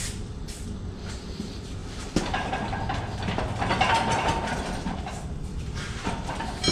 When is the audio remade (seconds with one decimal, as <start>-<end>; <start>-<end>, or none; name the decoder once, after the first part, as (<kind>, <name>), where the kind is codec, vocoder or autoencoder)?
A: none